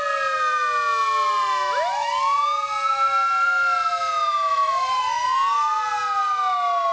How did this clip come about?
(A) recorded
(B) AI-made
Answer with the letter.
A